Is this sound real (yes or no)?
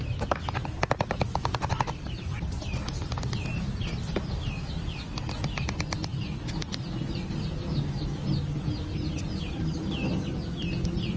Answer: yes